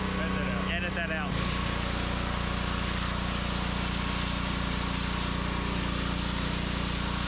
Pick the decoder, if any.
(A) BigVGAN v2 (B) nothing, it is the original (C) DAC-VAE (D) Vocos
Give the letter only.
B